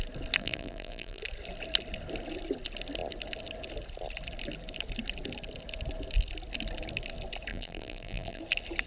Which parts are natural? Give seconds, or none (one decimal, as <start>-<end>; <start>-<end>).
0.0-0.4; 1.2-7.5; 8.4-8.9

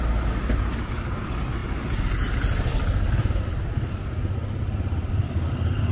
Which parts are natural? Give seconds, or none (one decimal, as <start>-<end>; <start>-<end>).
0.0-5.9

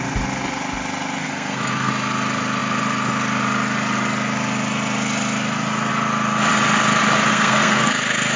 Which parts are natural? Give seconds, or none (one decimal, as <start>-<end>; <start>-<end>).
0.0-1.2; 1.9-7.3

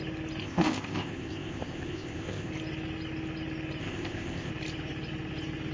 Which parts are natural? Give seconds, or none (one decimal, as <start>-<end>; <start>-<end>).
0.0-0.4; 2.5-3.8; 4.5-5.7

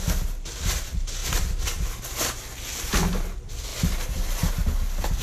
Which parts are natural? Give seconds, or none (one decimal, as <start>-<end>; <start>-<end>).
0.0-5.2

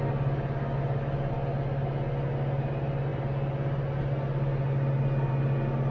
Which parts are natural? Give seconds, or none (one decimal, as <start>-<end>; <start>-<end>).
0.0-5.9

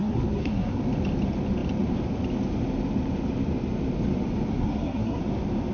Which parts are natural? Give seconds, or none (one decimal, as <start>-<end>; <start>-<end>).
0.8-4.5; 5.2-5.7